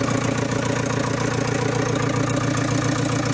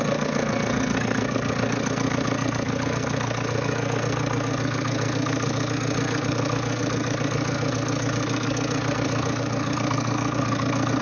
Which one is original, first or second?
first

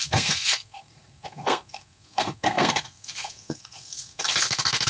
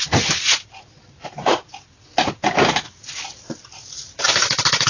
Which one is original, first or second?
second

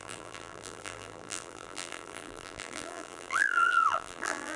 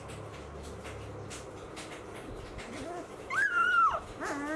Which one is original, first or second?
second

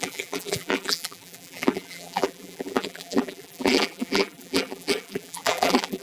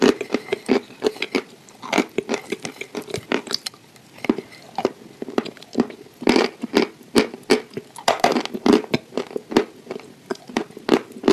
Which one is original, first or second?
second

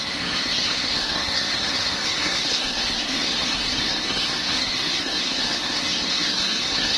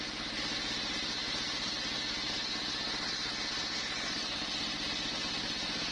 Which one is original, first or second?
second